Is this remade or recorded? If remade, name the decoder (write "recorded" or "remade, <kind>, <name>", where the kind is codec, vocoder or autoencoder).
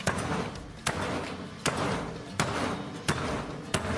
recorded